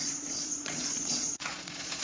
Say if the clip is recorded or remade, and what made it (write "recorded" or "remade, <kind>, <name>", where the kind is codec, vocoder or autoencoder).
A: remade, vocoder, Vocos